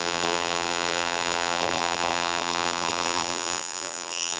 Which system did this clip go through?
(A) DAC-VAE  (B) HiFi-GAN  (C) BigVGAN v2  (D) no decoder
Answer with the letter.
C